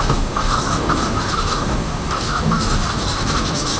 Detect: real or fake fake